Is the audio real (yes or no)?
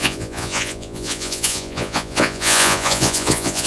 no